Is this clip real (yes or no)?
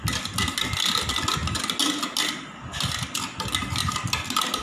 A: yes